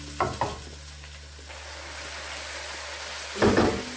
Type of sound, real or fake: real